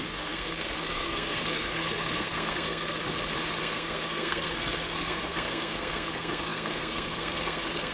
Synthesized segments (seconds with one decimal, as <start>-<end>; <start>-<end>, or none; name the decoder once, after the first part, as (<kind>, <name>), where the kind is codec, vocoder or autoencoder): 0.0-3.0 (codec, SNAC); 3.6-7.9